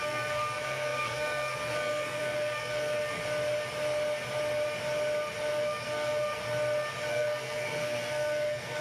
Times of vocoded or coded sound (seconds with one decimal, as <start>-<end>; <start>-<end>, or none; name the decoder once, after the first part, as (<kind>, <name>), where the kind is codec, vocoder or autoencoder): 0.0-3.2 (codec, SNAC); 5.5-6.4; 7.1-8.8